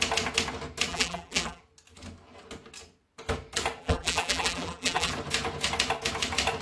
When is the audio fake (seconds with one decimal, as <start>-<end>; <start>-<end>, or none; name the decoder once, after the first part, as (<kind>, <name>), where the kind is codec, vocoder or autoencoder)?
0.9-1.6 (vocoder, BigVGAN v2); 3.8-5.1